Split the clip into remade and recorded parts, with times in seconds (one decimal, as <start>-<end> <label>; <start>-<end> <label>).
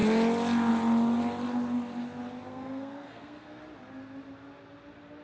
0.0-2.5 recorded; 2.5-3.6 remade; 3.6-5.2 recorded